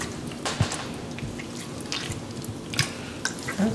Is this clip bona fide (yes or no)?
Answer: yes